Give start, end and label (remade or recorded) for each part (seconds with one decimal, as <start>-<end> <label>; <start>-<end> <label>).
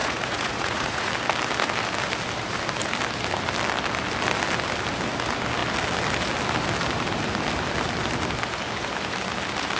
0.0-1.1 remade; 1.1-9.8 recorded